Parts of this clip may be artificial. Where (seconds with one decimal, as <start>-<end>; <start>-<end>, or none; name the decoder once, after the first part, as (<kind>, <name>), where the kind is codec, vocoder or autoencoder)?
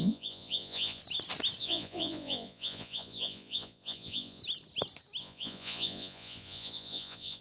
0.0-1.0 (vocoder, Vocos); 1.6-4.4; 5.2-7.4